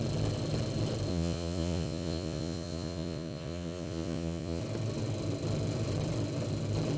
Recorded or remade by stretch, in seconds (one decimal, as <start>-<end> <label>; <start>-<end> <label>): 0.0-1.1 recorded; 1.1-4.6 remade; 4.6-7.0 recorded